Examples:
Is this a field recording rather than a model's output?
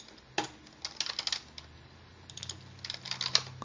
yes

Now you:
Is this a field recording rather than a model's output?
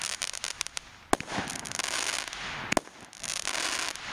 yes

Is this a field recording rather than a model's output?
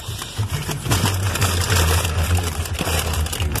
yes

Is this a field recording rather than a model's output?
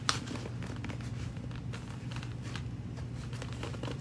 yes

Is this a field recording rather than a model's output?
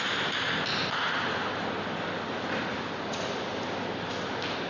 yes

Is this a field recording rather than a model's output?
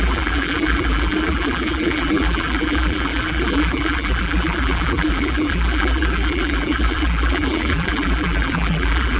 no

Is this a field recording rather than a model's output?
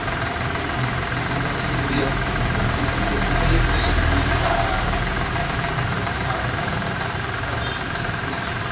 no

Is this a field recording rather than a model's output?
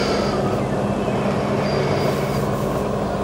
yes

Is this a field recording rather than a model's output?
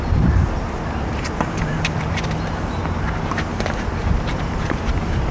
no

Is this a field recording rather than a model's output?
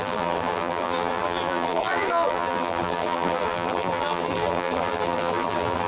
no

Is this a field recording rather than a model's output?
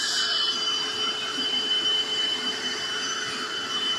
no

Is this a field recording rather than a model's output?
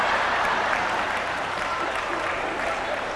no